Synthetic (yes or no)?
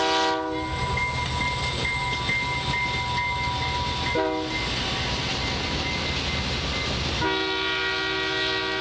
no